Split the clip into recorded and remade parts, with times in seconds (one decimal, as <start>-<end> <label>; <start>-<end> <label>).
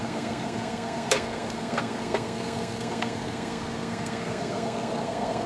0.0-5.5 remade